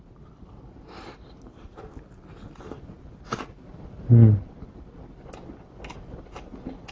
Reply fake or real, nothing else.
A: real